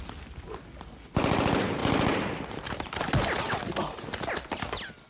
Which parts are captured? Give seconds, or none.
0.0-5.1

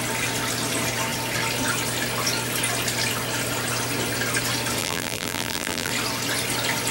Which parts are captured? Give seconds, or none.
0.0-4.8; 5.9-6.9

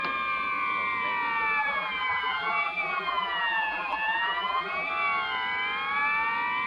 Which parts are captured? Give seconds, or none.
0.0-1.6; 4.9-6.7

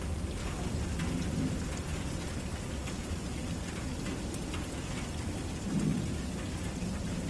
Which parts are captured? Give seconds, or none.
0.0-3.4; 4.3-7.3

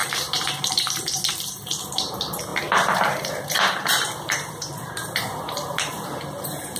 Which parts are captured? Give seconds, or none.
none

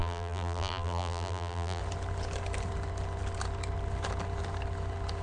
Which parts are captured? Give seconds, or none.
1.8-5.2

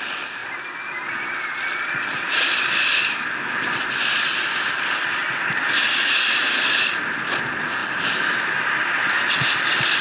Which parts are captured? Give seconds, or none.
0.0-10.0